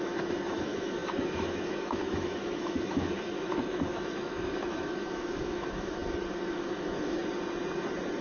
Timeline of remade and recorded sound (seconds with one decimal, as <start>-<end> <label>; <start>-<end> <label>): 0.0-6.0 remade; 6.0-6.5 recorded; 6.5-7.2 remade; 7.2-8.2 recorded